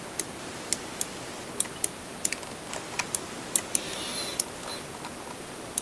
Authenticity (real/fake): real